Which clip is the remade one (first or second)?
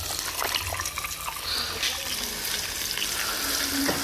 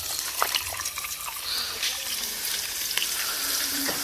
second